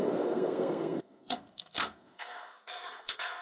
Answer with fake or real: fake